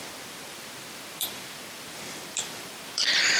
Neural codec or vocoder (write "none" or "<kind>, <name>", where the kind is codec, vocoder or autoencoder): vocoder, BigVGAN v2